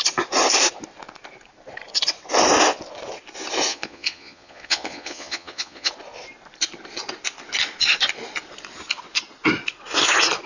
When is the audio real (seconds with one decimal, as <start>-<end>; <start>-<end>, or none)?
0.0-3.7; 5.9-10.5